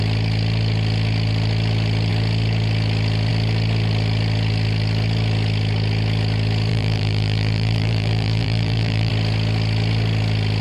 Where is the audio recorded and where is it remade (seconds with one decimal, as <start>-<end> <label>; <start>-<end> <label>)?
0.0-6.7 recorded; 6.7-9.1 remade; 9.1-10.6 recorded